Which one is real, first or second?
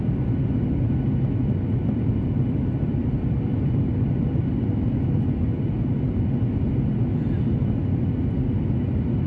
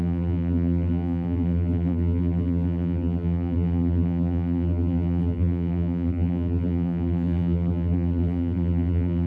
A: first